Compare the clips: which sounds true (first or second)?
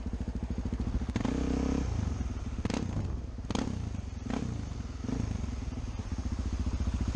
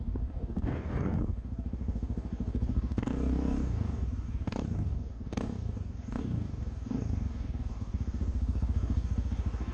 first